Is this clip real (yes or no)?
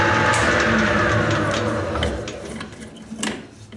yes